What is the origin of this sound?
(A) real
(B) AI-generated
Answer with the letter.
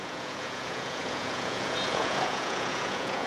B